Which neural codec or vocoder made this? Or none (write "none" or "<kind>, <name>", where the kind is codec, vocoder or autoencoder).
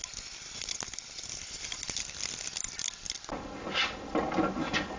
none